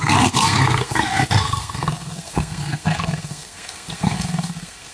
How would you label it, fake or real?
fake